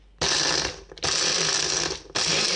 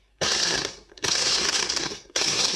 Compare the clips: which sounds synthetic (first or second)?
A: second